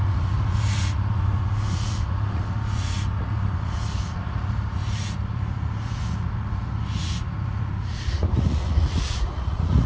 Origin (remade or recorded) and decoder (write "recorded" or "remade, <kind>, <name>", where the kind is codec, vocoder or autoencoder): remade, vocoder, Vocos